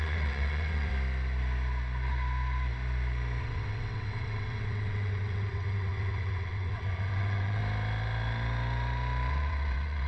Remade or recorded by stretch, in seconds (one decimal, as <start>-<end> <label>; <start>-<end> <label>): 0.0-0.9 remade; 0.9-3.4 recorded; 3.4-7.6 remade; 7.6-9.3 recorded; 9.3-10.1 remade